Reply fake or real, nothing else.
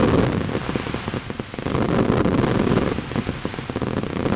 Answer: real